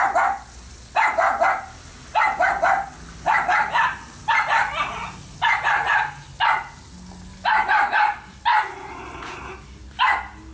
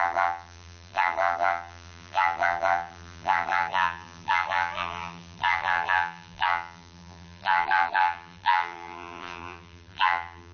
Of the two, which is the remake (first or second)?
second